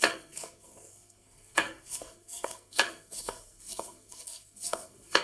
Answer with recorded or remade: remade